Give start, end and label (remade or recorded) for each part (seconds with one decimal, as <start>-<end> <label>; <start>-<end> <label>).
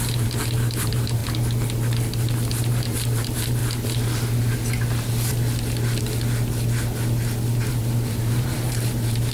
0.0-1.2 remade; 1.2-2.6 recorded; 2.6-3.6 remade; 3.6-7.7 recorded; 7.7-9.3 remade